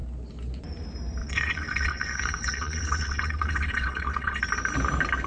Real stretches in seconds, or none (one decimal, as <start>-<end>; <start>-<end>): 0.0-1.2; 4.4-5.3